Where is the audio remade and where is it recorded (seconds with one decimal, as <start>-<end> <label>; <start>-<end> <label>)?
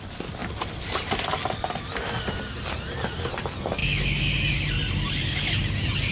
0.0-6.1 recorded